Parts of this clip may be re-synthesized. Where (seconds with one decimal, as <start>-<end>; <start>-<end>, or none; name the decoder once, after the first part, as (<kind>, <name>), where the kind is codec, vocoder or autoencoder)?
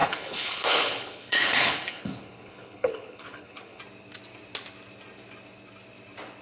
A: 0.0-3.8 (codec, HILCodec)